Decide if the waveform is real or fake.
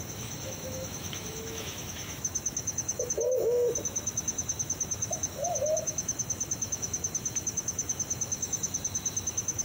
fake